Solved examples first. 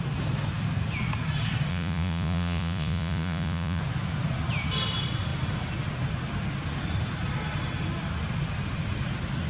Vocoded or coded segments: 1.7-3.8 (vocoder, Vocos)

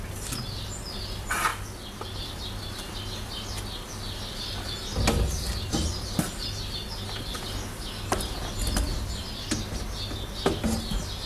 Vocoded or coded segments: none

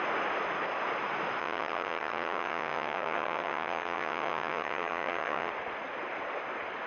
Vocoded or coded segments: 1.4-5.5 (vocoder, HiFi-GAN)

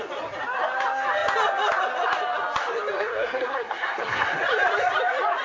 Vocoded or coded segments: 2.9-4.4 (codec, SNAC)